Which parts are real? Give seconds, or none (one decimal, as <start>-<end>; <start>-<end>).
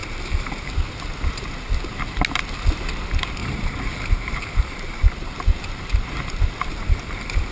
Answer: 0.7-3.4; 5.1-6.7